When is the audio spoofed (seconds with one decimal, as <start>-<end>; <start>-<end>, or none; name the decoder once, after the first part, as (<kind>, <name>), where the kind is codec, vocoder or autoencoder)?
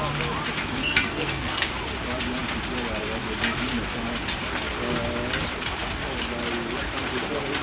0.8-1.7 (codec, SNAC)